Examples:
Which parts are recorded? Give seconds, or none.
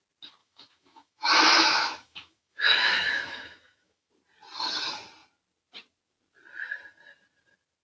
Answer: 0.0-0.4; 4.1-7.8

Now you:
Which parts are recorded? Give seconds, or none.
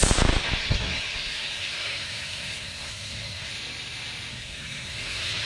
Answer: 0.0-0.6; 3.5-4.3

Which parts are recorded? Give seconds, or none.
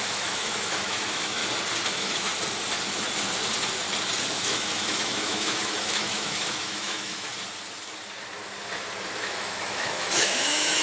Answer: 1.4-1.9; 2.3-4.3; 7.3-9.2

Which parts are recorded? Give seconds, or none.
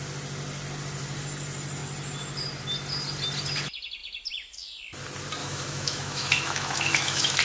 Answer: 0.0-5.4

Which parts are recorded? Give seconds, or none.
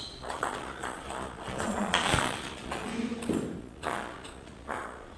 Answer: 2.9-3.6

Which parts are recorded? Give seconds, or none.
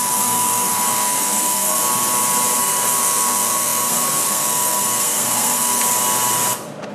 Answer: 1.9-2.6; 5.8-6.9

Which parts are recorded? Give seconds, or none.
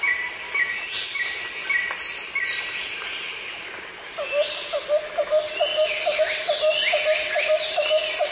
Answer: 0.0-8.3